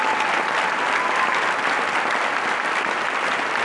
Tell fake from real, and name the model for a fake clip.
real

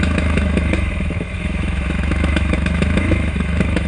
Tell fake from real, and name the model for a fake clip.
fake, autoencoder, DAC-VAE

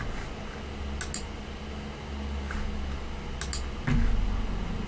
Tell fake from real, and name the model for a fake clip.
real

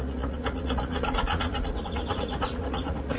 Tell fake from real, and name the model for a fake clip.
fake, vocoder, Vocos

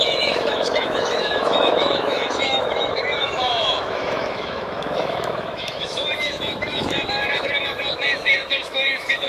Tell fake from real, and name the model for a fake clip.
fake, autoencoder, DAC-VAE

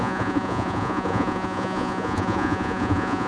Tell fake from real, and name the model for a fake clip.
fake, vocoder, Vocos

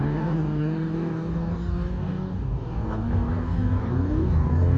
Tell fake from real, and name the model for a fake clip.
fake, codec, DAC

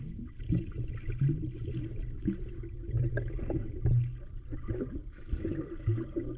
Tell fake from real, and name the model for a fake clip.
real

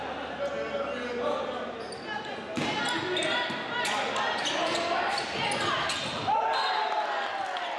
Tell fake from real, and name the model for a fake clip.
real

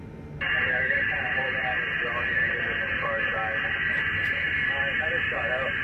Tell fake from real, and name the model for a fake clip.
real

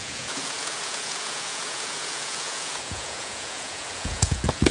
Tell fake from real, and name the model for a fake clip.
fake, vocoder, Vocos